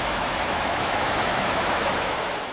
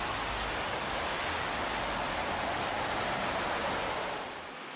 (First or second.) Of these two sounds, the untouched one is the second